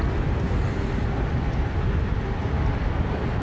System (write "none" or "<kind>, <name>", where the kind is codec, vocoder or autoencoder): none